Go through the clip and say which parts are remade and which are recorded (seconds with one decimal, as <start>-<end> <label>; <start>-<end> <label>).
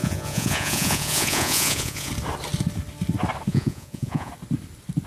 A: 0.0-2.1 remade; 2.1-3.5 recorded; 3.5-4.3 remade; 4.3-5.1 recorded